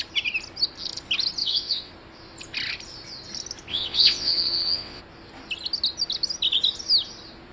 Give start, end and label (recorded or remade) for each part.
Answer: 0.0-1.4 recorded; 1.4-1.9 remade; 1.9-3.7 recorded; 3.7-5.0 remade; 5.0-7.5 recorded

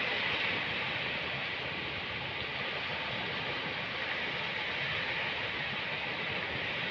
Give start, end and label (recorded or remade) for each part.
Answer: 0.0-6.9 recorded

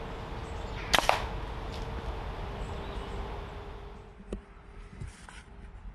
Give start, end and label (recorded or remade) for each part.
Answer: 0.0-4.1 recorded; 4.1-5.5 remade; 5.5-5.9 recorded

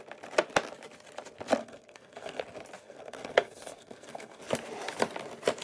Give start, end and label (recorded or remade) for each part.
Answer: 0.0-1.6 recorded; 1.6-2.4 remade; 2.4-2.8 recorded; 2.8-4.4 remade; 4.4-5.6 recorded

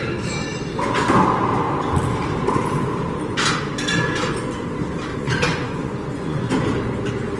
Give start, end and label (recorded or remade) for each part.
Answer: 0.0-5.1 recorded; 5.1-6.5 remade; 6.5-7.4 recorded

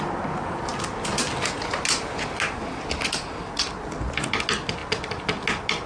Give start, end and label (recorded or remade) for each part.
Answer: 0.0-5.9 recorded

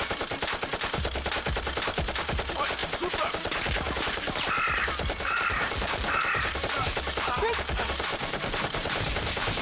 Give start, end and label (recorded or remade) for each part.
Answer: 0.0-9.6 remade

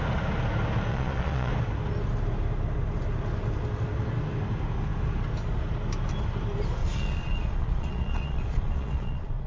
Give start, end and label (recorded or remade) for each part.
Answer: 0.0-0.9 recorded; 0.9-1.5 remade; 1.5-6.8 recorded; 6.8-9.5 remade